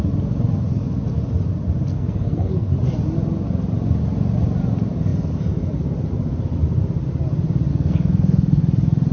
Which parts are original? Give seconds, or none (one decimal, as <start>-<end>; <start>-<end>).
0.0-1.9; 2.7-7.7; 8.6-9.1